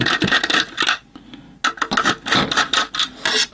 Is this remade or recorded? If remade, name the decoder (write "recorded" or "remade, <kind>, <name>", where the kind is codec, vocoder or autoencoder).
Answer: recorded